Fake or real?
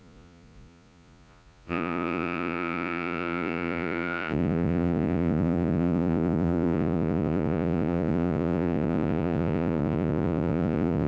fake